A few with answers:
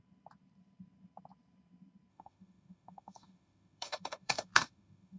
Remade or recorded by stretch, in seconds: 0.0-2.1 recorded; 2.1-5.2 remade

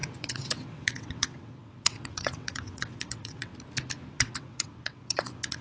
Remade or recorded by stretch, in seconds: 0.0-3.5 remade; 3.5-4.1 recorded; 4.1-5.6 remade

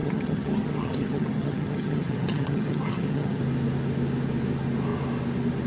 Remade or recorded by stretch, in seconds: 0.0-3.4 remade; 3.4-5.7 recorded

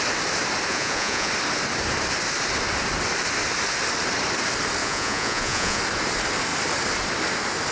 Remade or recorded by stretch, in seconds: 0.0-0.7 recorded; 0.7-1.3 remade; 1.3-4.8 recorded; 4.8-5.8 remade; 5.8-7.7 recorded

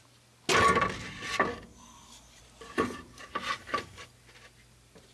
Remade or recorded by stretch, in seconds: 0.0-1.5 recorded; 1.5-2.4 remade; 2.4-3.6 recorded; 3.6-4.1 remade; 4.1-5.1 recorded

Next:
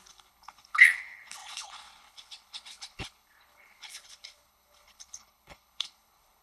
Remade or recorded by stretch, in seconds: 0.0-6.4 remade